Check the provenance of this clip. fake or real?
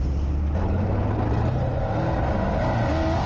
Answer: real